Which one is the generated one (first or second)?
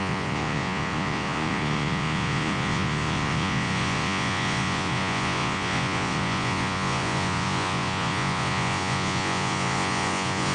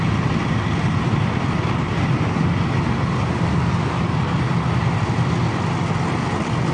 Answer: first